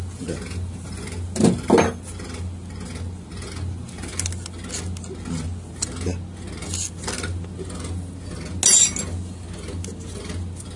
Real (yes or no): yes